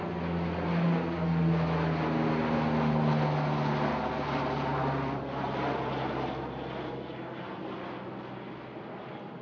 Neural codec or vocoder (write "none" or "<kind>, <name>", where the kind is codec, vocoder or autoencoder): none